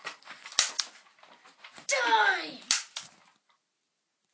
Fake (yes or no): no